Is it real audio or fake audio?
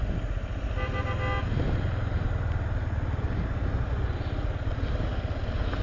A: real